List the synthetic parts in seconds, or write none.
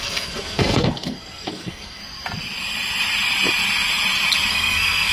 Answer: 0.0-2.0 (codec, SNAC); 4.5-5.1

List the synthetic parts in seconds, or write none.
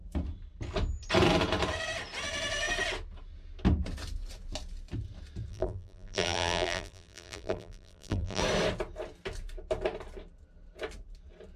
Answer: 5.5-8.4 (vocoder, BigVGAN v2)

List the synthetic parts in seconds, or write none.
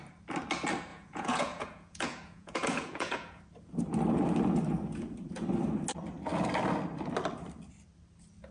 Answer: 0.9-3.4 (vocoder, Vocos)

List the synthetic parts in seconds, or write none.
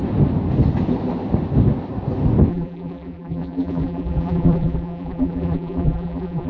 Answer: 2.5-6.5 (vocoder, BigVGAN v2)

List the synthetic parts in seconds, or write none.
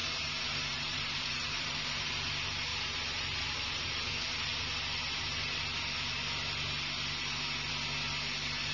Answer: 0.0-2.1 (vocoder, BigVGAN v2); 2.7-3.9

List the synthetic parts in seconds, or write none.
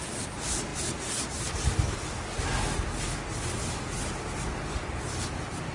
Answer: none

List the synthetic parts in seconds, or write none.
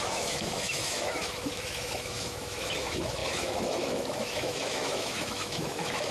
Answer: 0.0-6.1 (autoencoder, DAC-VAE)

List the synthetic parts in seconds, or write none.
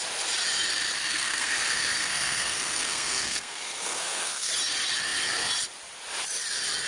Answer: 1.1-4.5 (codec, SNAC)